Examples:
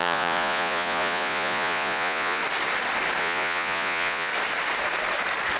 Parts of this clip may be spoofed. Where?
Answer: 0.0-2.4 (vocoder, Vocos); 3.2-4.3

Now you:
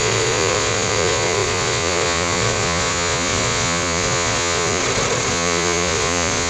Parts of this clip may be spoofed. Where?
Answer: 0.0-4.8 (vocoder, Vocos); 5.3-6.5

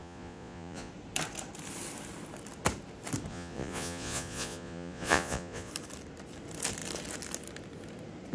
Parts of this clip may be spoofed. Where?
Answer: 0.0-0.9 (vocoder, Vocos); 3.3-5.7

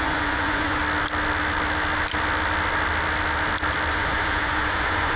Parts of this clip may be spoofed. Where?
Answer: 0.0-0.8 (vocoder, Vocos); 3.9-5.2

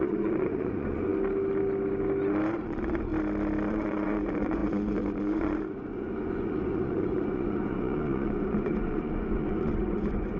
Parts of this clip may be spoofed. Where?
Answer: 0.0-1.1 (vocoder, Vocos); 2.5-3.1; 3.7-10.4

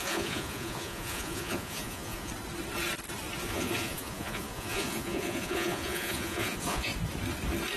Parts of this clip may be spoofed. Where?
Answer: 0.0-2.3 (vocoder, Vocos); 3.4-6.9